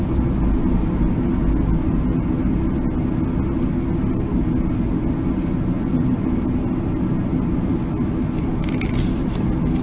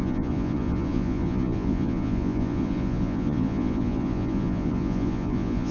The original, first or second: first